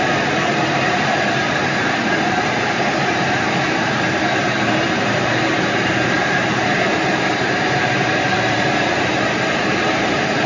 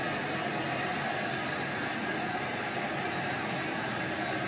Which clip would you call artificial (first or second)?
first